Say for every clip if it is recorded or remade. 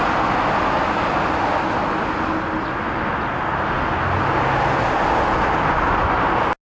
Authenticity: recorded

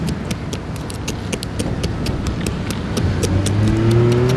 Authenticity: recorded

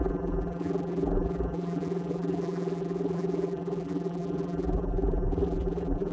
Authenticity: remade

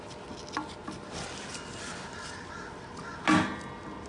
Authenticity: recorded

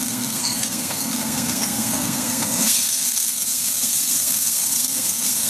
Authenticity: remade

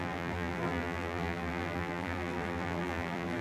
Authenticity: remade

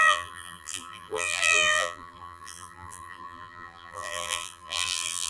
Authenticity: remade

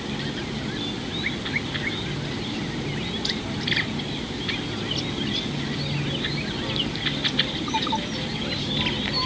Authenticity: recorded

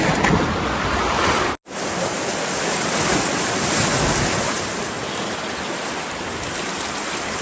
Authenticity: recorded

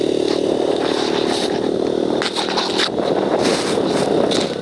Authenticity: recorded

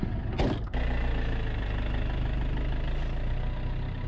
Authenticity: recorded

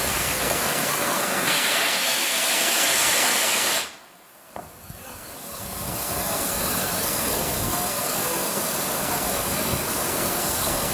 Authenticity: remade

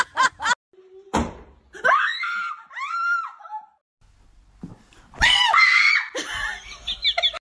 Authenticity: recorded